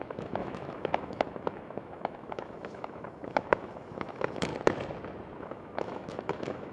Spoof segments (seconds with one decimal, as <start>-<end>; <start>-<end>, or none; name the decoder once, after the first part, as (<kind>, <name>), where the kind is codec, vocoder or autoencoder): 0.0-4.5 (autoencoder, DAC-VAE); 5.4-6.7